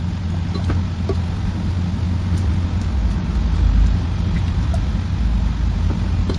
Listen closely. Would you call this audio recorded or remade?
recorded